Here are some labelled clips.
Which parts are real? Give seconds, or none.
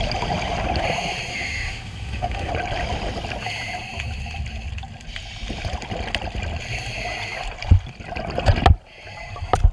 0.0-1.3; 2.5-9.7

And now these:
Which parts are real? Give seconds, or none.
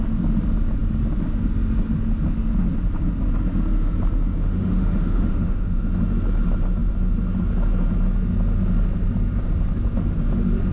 0.0-4.4; 5.8-10.7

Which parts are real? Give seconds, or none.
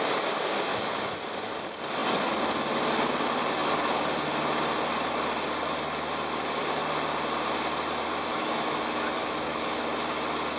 0.0-0.7; 1.2-8.3; 9.8-10.6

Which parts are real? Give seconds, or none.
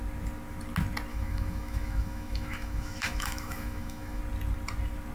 0.0-1.1; 4.2-5.1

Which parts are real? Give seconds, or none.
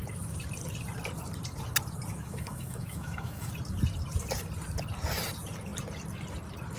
0.0-2.2; 3.5-6.8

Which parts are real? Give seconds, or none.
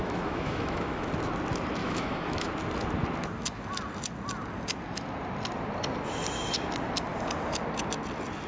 1.1-1.8; 2.5-8.5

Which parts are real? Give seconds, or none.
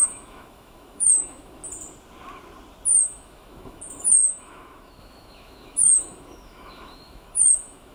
1.6-3.0